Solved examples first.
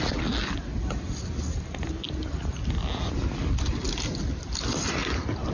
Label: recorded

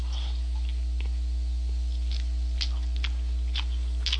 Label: recorded